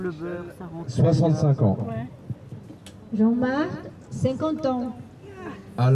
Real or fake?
real